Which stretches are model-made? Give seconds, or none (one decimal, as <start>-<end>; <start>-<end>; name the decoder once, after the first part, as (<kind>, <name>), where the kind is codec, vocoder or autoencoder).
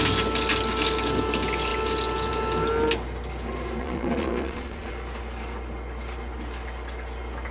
3.8-4.9 (vocoder, Vocos)